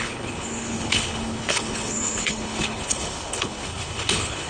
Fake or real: fake